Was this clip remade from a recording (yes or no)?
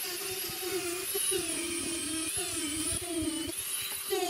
no